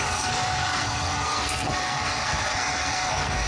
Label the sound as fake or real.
fake